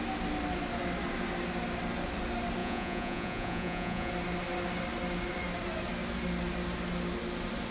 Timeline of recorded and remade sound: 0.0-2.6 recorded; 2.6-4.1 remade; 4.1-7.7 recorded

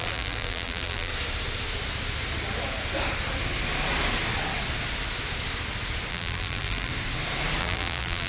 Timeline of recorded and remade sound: 0.0-1.1 remade; 1.1-6.1 recorded; 6.1-6.9 remade; 6.9-7.6 recorded; 7.6-8.3 remade